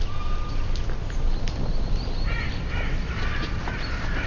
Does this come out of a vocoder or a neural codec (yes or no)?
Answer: no